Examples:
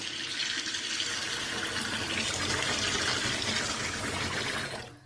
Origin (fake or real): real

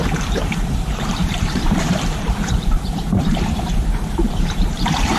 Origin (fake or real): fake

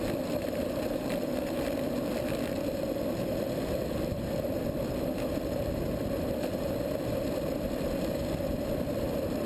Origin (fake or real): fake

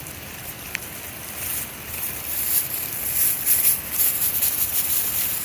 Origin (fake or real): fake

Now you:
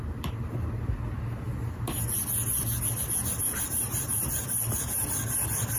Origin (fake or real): real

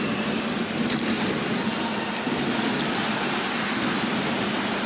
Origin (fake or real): real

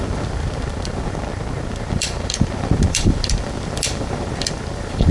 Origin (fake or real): fake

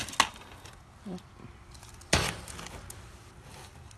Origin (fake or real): real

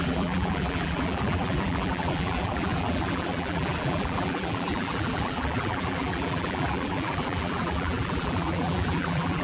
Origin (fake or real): fake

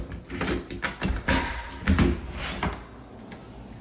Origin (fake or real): real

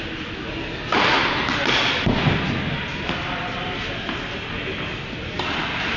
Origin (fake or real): real